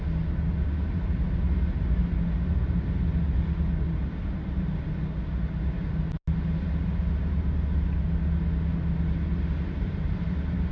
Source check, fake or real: real